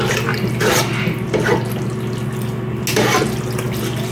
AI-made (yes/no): no